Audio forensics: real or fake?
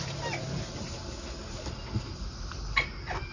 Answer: real